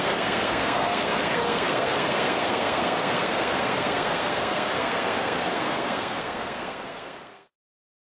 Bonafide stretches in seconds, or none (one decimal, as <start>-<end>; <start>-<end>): none